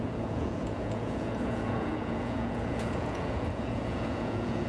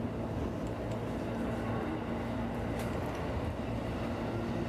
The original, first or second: second